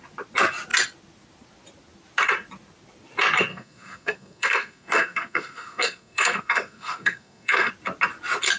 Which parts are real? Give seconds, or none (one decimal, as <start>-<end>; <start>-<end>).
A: 0.0-3.5; 7.7-8.6